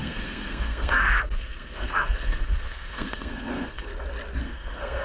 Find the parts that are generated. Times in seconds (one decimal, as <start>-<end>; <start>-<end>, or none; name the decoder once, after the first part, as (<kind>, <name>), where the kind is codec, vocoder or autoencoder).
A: 0.0-3.9 (codec, SNAC); 4.4-5.0